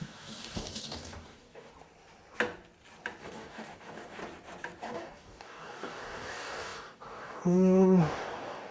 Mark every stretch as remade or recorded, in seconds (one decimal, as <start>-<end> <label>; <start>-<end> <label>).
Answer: 0.0-1.7 remade; 1.7-3.2 recorded; 3.2-4.2 remade; 4.2-4.8 recorded; 4.8-8.7 remade